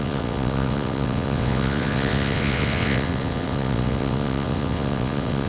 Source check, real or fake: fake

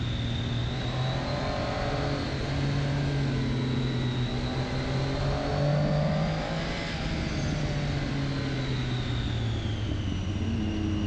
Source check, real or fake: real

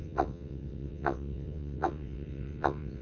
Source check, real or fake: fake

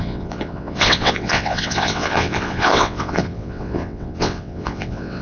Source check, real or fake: fake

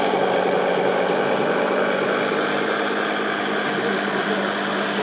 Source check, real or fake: real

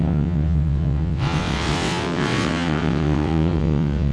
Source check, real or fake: fake